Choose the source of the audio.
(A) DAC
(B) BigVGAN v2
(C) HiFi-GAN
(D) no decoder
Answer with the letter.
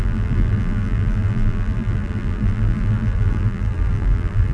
B